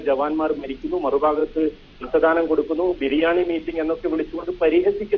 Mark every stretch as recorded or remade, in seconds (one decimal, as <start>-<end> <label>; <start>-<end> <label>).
0.0-1.4 recorded; 1.4-2.1 remade; 2.1-2.9 recorded; 2.9-3.7 remade; 3.7-5.2 recorded